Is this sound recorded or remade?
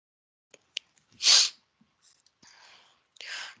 recorded